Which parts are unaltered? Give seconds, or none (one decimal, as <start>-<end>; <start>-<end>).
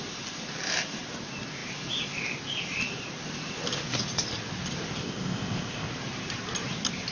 0.0-5.0; 5.9-7.1